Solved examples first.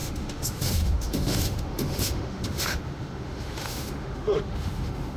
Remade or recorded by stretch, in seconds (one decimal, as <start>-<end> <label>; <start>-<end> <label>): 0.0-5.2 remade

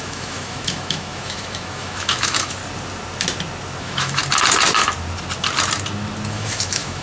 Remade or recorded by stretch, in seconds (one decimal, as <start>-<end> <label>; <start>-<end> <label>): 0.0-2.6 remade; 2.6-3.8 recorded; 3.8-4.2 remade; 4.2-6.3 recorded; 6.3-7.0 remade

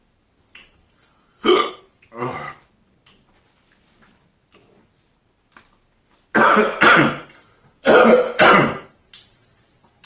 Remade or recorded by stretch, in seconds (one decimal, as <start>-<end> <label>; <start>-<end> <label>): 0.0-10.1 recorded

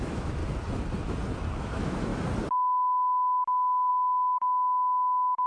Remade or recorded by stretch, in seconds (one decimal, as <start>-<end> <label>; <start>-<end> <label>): 0.0-0.4 remade; 0.4-1.5 recorded; 1.5-2.1 remade; 2.1-3.9 recorded; 3.9-5.5 remade